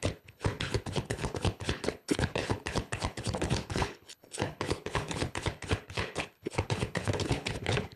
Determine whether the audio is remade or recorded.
remade